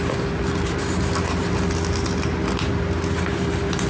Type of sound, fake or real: real